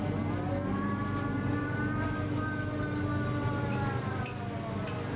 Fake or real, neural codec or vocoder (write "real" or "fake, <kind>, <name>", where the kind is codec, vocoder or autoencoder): real